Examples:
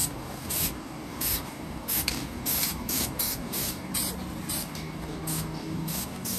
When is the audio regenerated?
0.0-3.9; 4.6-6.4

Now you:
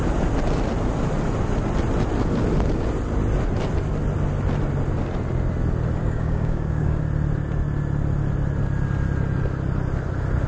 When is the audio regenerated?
6.0-7.0

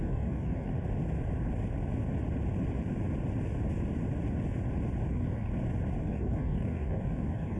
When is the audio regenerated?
0.0-0.7; 5.1-5.5; 6.0-7.6

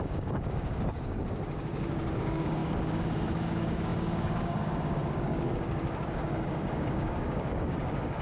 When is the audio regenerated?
0.0-8.2

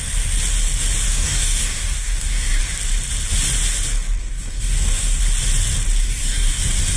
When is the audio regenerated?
1.1-2.6; 4.2-5.2; 6.0-6.6

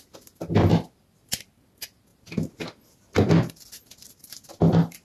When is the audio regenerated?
none

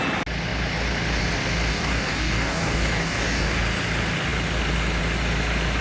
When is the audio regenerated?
1.7-3.6